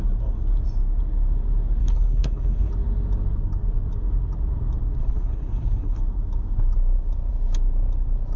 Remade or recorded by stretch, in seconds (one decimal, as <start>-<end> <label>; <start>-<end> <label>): 0.0-1.8 recorded; 1.8-2.7 remade; 2.7-5.0 recorded; 5.0-6.0 remade; 6.0-8.4 recorded